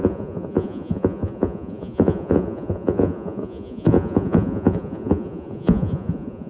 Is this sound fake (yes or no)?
yes